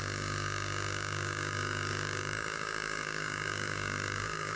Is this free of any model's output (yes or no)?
no